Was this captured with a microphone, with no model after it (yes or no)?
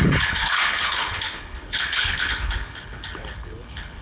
no